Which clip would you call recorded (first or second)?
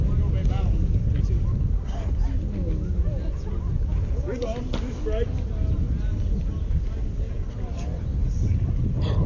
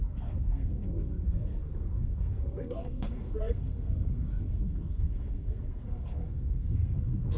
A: first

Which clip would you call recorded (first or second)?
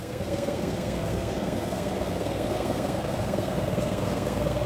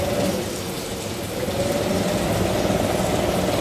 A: second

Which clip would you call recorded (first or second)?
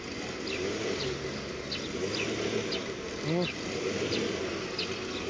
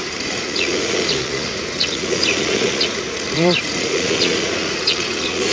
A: first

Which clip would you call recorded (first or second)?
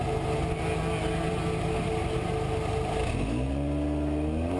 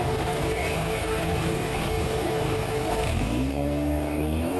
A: first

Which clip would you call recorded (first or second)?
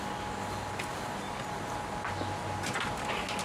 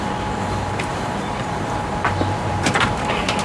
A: first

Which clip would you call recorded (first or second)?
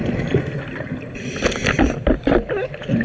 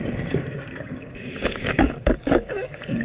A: first